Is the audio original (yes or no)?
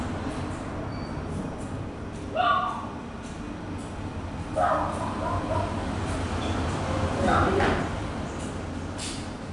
yes